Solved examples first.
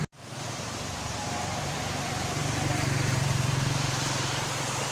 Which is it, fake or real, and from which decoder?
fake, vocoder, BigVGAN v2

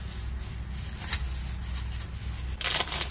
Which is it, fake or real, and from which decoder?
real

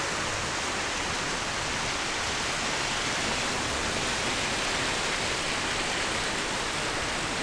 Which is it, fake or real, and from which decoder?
real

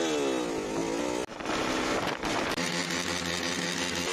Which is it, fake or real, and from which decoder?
real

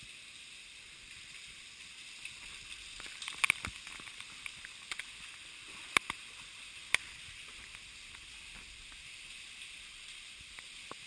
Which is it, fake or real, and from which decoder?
real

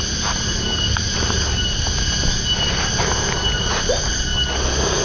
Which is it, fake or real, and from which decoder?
real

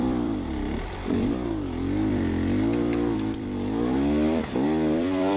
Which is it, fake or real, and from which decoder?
fake, vocoder, BigVGAN v2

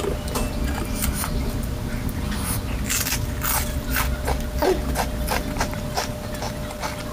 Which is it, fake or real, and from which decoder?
real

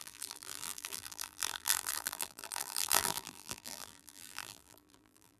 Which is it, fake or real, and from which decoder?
fake, vocoder, BigVGAN v2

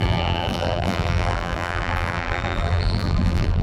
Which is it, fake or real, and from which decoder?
fake, vocoder, BigVGAN v2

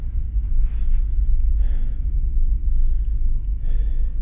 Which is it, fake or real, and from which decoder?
real